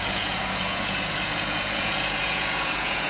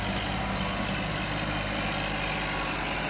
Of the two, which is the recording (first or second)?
second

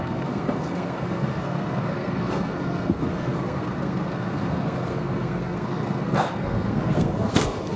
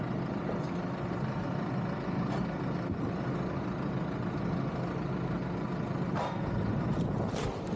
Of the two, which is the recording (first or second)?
second